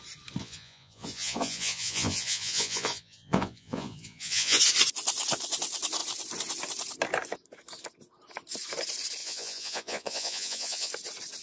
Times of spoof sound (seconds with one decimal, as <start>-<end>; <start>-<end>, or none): 0.4-4.6; 9.2-10.9